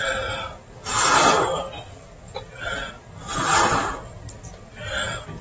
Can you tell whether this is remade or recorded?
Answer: recorded